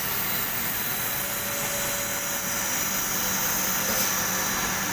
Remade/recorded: recorded